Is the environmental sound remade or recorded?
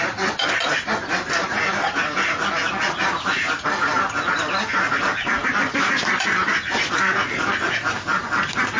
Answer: recorded